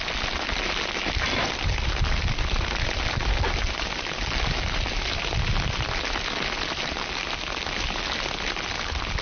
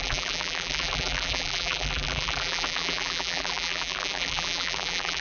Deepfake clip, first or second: second